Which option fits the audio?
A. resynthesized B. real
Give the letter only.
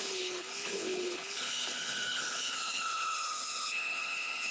A